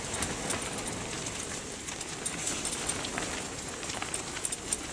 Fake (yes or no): no